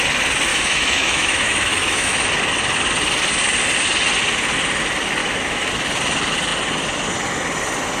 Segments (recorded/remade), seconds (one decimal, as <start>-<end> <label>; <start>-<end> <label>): 0.0-0.5 recorded; 0.5-2.3 remade; 2.3-5.2 recorded; 5.2-5.7 remade; 5.7-8.0 recorded